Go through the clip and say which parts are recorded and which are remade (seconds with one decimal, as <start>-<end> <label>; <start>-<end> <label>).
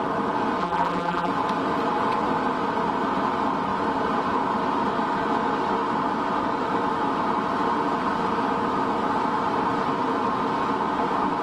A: 0.0-0.6 recorded; 0.6-1.3 remade; 1.3-11.4 recorded